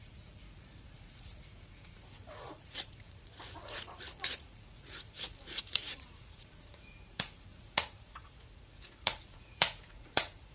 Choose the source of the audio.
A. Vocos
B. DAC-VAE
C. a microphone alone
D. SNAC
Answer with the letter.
A